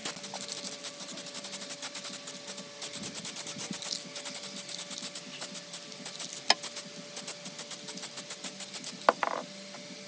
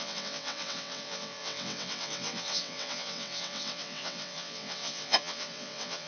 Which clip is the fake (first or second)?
second